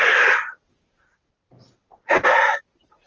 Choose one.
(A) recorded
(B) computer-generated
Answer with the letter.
A